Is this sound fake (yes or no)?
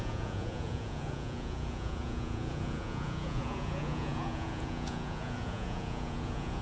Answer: yes